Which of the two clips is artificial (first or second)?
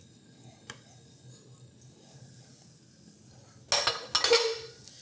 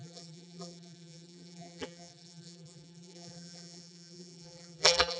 second